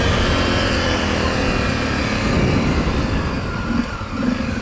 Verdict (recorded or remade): recorded